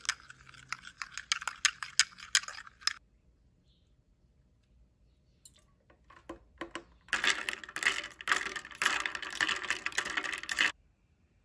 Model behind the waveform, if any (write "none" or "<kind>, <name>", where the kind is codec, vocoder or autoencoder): none